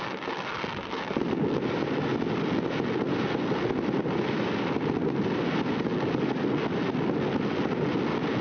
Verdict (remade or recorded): recorded